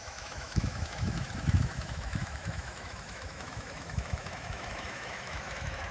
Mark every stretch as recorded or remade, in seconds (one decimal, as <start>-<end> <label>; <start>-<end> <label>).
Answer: 0.0-5.9 remade